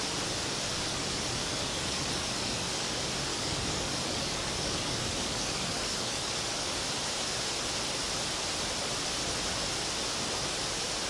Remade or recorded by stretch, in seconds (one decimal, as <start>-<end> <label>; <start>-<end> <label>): 0.0-0.9 recorded; 0.9-2.9 remade; 2.9-3.3 recorded; 3.3-6.8 remade; 6.8-11.1 recorded